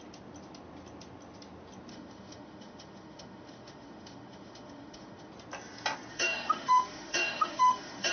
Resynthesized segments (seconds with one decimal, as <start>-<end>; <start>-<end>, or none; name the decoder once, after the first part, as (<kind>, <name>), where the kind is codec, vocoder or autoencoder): 1.9-5.3 (autoencoder, DAC-VAE); 6.1-8.1